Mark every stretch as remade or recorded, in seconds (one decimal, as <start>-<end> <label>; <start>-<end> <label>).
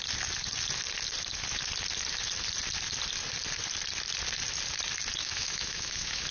0.0-5.2 recorded; 5.2-6.3 remade